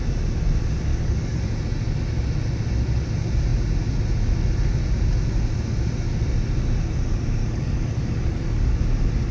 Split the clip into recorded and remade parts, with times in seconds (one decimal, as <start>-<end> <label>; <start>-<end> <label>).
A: 0.0-0.9 recorded; 0.9-1.4 remade; 1.4-7.4 recorded; 7.4-8.8 remade; 8.8-9.3 recorded